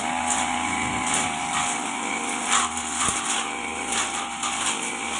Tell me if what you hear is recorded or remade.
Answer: recorded